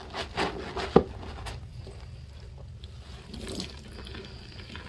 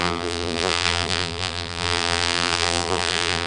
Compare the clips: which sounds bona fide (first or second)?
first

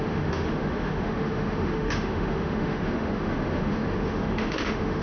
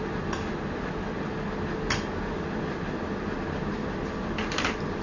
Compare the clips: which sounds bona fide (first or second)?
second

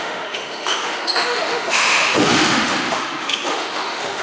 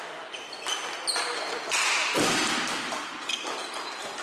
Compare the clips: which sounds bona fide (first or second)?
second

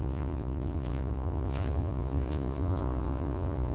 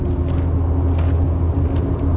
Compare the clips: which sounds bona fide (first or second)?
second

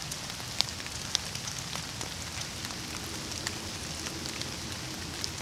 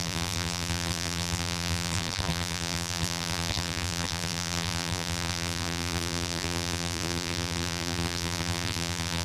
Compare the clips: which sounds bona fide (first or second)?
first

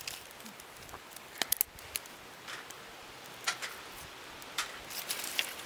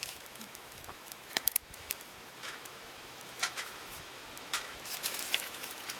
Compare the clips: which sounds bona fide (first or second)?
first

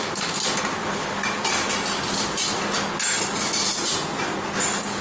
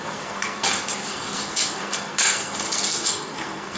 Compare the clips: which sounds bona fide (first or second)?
first